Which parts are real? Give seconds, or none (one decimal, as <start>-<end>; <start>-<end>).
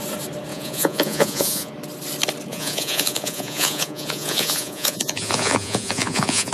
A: 0.0-0.5; 1.7-2.5